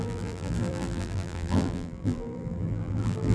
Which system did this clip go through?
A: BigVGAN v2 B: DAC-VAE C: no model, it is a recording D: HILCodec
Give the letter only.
A